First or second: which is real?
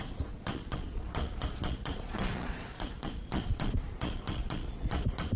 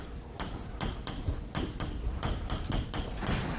second